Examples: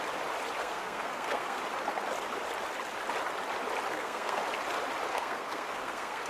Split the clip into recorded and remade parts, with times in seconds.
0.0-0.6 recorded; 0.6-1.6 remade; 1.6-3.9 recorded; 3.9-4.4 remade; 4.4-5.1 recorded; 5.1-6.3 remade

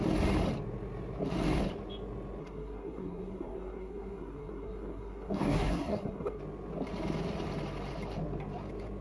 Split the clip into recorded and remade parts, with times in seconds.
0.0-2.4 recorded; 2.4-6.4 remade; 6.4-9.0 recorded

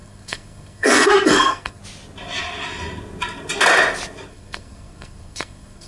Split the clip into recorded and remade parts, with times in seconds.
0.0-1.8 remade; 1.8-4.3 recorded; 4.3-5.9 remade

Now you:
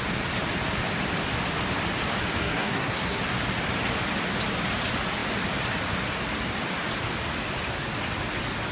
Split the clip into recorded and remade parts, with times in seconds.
0.0-2.4 recorded; 2.4-3.2 remade; 3.2-8.7 recorded

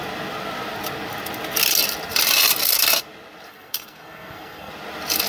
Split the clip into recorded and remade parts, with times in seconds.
0.0-3.5 recorded; 3.5-4.7 remade; 4.7-5.3 recorded

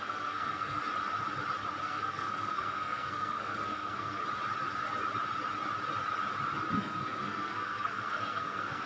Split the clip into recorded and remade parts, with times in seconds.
0.0-0.8 remade; 0.8-1.8 recorded; 1.8-4.2 remade; 4.2-6.7 recorded; 6.7-8.9 remade